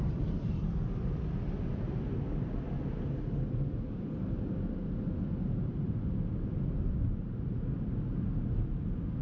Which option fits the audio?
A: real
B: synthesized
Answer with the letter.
A